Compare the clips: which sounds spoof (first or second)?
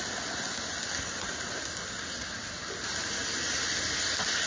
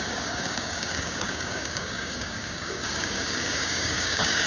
second